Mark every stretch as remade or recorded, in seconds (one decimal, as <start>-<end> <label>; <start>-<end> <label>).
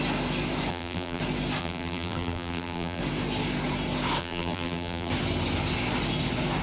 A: 0.0-0.7 recorded; 0.7-1.2 remade; 1.2-1.6 recorded; 1.6-3.0 remade; 3.0-4.2 recorded; 4.2-5.1 remade; 5.1-6.6 recorded